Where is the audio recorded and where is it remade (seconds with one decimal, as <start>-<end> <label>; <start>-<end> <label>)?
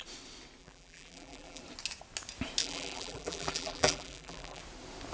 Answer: 0.0-0.6 recorded; 0.6-1.6 remade; 1.6-2.6 recorded; 2.6-4.6 remade; 4.6-5.1 recorded